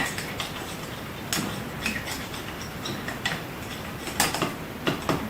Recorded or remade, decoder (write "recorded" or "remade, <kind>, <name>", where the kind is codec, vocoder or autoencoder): recorded